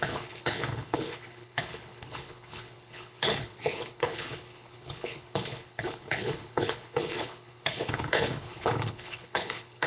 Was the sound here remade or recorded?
remade